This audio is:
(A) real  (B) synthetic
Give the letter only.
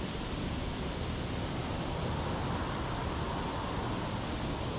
A